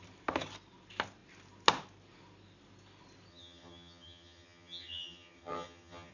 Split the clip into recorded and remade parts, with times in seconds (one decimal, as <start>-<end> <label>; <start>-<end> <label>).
0.0-3.3 recorded; 3.3-6.1 remade